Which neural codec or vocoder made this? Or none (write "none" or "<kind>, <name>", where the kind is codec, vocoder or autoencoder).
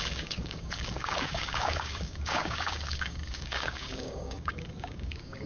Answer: codec, DAC